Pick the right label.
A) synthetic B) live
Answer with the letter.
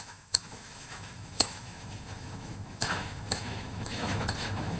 A